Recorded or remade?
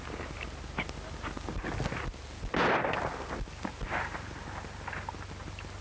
recorded